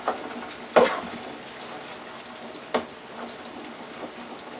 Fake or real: real